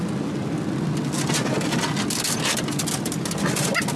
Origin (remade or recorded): recorded